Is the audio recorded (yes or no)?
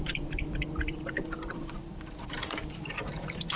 no